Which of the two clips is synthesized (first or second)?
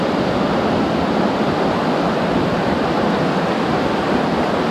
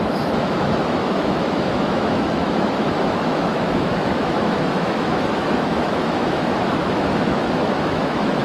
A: second